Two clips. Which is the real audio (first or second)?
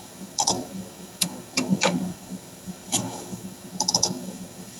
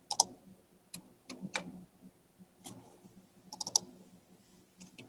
second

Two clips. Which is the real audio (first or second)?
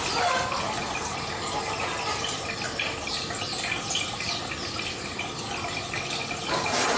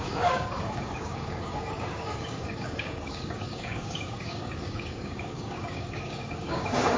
first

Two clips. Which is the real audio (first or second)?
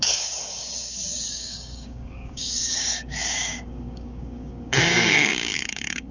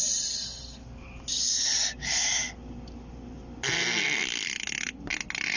second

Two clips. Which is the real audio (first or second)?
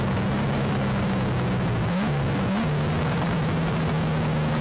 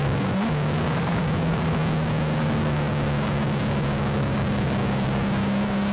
first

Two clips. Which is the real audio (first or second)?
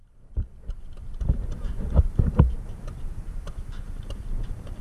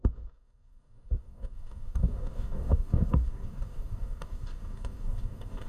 first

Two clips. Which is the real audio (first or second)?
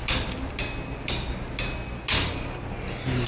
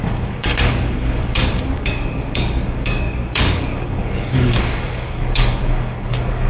first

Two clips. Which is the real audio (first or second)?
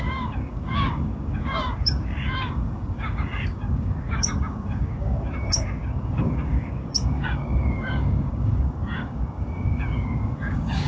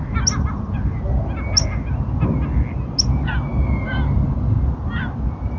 second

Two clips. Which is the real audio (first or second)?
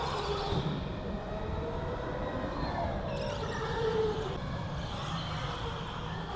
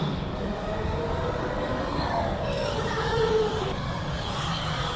first